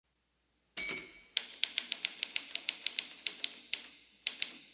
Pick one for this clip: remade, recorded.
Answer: recorded